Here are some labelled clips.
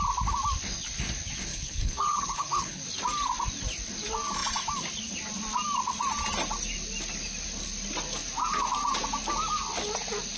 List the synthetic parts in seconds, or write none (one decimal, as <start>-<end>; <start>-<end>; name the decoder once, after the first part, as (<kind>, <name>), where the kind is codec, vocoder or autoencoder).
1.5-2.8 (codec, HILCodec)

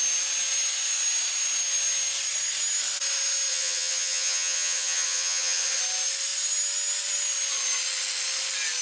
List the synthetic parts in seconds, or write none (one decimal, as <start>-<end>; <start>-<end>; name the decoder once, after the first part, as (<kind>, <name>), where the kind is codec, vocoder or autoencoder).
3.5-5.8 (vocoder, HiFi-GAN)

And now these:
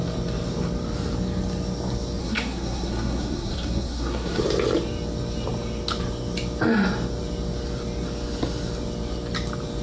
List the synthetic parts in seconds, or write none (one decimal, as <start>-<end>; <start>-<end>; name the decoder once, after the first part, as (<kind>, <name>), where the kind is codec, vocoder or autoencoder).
2.2-4.4 (codec, SNAC)

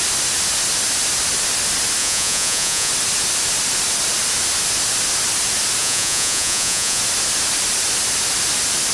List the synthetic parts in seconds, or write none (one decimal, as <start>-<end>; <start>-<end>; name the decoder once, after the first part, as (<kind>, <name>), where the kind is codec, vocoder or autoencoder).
2.0-2.9 (vocoder, Vocos); 5.8-7.0

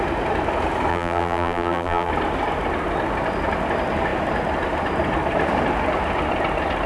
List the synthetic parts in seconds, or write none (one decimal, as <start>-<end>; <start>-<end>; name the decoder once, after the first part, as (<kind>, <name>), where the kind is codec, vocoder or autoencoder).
0.9-2.1 (vocoder, BigVGAN v2)